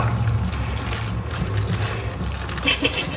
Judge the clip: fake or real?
real